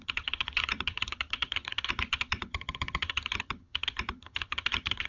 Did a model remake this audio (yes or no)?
yes